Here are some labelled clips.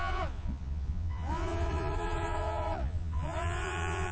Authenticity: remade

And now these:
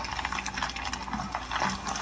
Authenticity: recorded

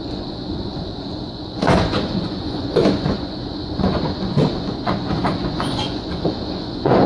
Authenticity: remade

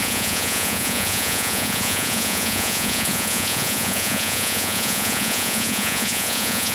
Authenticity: remade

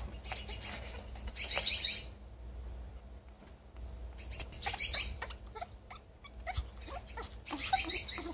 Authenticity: recorded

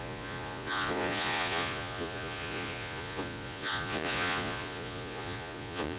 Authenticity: remade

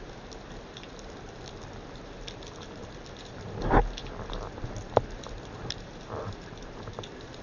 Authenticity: recorded